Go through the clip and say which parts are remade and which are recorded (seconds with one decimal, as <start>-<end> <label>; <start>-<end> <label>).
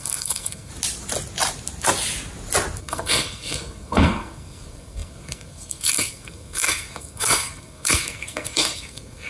0.0-0.7 remade; 0.7-2.8 recorded; 2.8-9.3 remade